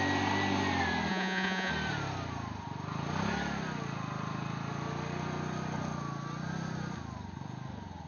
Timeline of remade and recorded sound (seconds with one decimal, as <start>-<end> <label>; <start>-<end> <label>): 0.0-1.1 recorded; 1.1-1.7 remade; 1.7-8.1 recorded